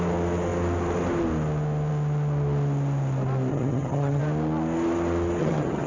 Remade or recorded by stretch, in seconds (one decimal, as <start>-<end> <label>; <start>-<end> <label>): 0.0-3.5 recorded; 3.5-4.2 remade; 4.2-5.4 recorded; 5.4-5.9 remade